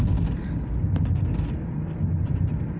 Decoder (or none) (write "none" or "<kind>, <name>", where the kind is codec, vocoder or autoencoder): none